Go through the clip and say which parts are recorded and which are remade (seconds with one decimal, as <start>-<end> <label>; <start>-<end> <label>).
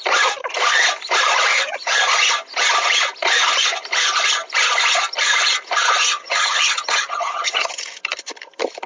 0.0-1.5 recorded; 1.5-2.0 remade; 2.0-6.1 recorded; 6.1-7.7 remade; 7.7-8.9 recorded